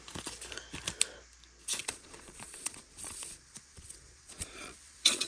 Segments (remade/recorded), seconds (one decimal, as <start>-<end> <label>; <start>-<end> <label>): 0.0-1.8 recorded; 1.8-5.3 remade